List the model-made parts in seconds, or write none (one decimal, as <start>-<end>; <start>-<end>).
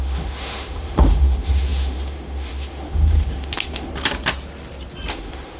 0.0-3.9; 5.1-5.6